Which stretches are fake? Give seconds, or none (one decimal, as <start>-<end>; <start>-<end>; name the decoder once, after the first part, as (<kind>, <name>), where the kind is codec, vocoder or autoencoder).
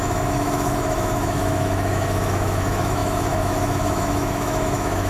0.0-5.1 (autoencoder, DAC-VAE)